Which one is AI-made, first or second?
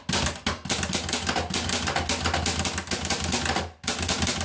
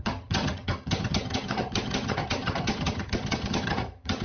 second